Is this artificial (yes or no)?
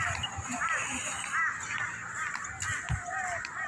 no